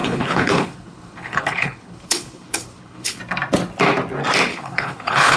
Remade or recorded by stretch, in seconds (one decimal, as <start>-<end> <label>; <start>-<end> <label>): 0.0-3.2 remade; 3.2-4.5 recorded; 4.5-5.4 remade